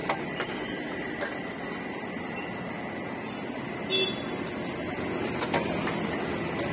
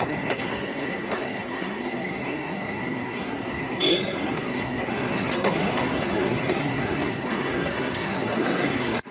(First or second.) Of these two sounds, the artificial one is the second